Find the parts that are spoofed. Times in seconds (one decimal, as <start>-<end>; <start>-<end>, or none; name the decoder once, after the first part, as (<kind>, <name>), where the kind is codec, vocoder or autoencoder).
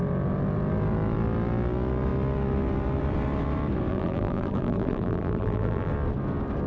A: 3.9-5.9 (vocoder, BigVGAN v2)